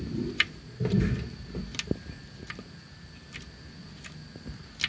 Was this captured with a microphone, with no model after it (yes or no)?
yes